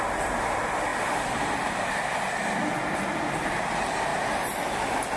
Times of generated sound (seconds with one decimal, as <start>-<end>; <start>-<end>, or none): 4.1-4.7